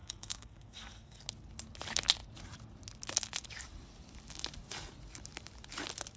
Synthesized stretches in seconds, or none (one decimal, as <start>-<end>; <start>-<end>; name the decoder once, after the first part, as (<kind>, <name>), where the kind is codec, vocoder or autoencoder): 0.0-1.2 (codec, SNAC)